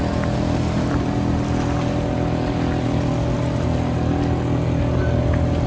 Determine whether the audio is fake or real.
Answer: real